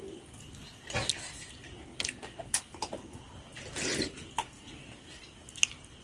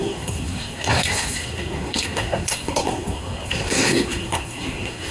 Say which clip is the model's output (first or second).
second